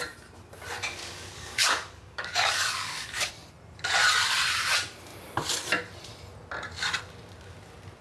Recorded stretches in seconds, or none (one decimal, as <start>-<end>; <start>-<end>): 0.0-1.0; 3.3-8.0